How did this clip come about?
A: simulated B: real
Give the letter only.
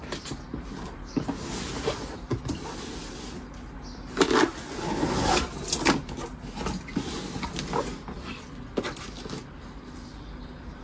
B